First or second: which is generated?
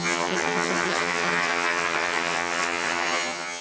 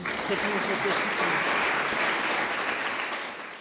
first